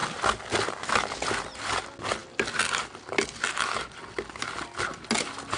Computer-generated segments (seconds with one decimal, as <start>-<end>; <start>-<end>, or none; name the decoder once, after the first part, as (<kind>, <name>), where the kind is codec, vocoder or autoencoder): none